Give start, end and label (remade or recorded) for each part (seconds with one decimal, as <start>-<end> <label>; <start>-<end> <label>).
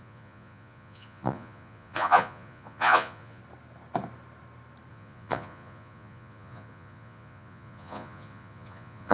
0.0-3.4 remade; 3.4-4.9 recorded; 4.9-9.1 remade